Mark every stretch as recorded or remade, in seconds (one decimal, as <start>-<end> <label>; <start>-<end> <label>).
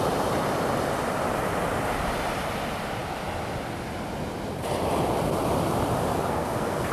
0.0-6.1 recorded; 6.1-6.9 remade